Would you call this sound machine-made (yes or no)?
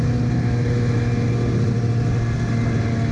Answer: no